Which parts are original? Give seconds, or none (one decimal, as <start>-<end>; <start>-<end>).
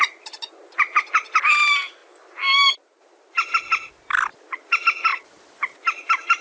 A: 0.0-6.4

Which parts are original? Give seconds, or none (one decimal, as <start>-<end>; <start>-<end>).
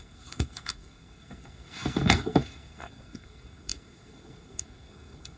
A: none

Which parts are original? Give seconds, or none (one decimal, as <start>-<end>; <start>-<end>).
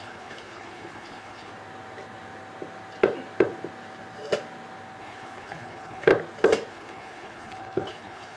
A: 1.5-5.0; 6.1-6.7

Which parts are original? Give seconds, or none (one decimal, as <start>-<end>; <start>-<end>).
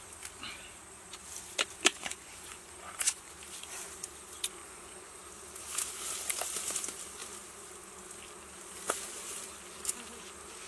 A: 0.0-1.9; 3.3-4.6; 5.2-10.7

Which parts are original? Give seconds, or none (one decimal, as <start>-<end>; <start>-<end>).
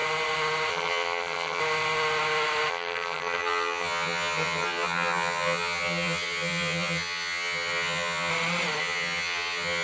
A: 0.0-0.7; 1.6-2.7; 8.3-8.8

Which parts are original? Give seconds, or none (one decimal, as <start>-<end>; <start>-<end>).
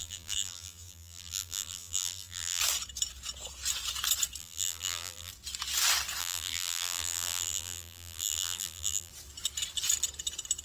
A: 2.6-4.4; 5.3-6.2; 9.1-10.6